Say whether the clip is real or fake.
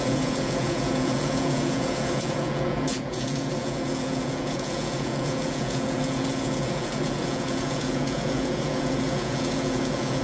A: fake